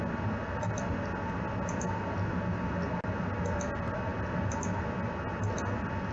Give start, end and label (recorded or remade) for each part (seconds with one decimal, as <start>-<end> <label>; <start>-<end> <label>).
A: 0.0-6.1 recorded

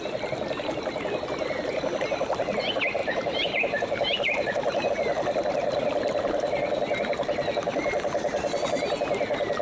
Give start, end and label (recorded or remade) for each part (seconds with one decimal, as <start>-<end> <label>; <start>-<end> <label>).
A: 0.0-3.0 recorded; 3.0-4.9 remade; 4.9-9.6 recorded

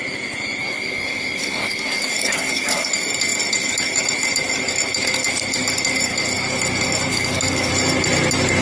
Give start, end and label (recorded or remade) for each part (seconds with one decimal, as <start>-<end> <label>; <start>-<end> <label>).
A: 0.0-0.6 recorded; 0.6-2.9 remade; 2.9-7.1 recorded; 7.1-7.7 remade; 7.7-8.6 recorded

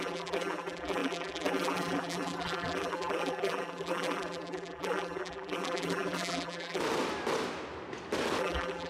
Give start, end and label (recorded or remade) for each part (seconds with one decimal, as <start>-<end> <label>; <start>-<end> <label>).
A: 0.0-6.8 remade; 6.8-8.4 recorded; 8.4-8.9 remade